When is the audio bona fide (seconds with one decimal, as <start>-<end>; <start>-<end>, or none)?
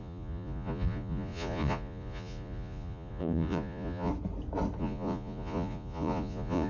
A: 4.1-4.8